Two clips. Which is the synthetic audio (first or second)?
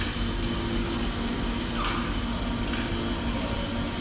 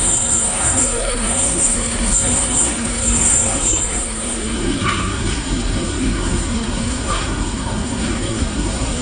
second